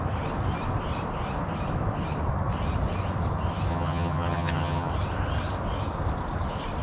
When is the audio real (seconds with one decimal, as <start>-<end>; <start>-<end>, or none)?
0.0-3.7; 4.9-6.8